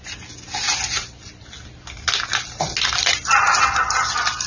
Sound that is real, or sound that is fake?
real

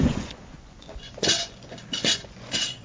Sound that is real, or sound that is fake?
fake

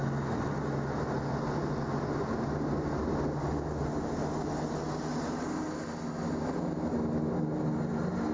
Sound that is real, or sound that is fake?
real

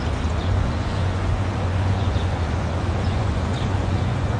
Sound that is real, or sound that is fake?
fake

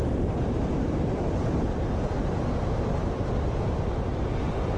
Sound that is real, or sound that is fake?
real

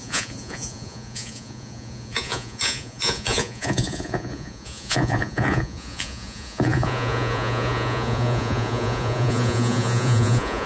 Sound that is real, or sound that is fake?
fake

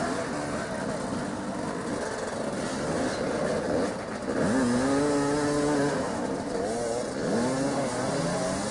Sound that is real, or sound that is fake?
real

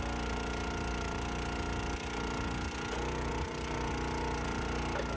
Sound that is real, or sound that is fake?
real